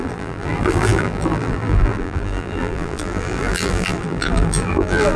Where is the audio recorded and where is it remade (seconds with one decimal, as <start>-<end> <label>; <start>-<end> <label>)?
0.0-5.2 remade